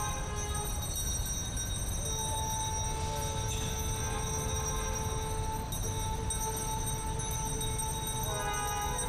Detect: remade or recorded recorded